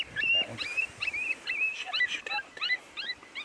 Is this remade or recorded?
recorded